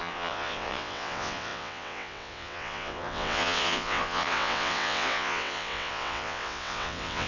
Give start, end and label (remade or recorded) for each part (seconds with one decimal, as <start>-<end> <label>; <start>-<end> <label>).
0.0-7.3 remade